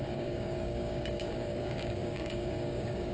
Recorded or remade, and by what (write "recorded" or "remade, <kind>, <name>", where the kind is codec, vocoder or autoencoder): remade, codec, DAC